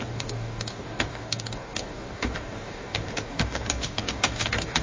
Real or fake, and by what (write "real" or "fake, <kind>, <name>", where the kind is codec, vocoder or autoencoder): fake, codec, DAC